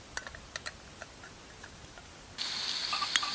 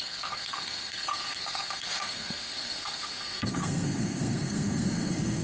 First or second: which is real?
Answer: first